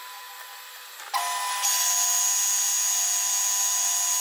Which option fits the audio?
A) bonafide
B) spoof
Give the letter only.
A